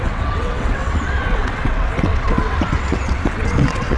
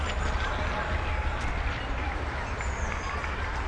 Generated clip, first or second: first